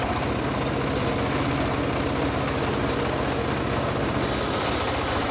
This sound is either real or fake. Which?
real